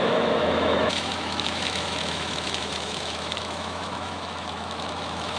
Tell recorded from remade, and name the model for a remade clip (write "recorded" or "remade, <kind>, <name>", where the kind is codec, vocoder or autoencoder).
remade, autoencoder, DAC-VAE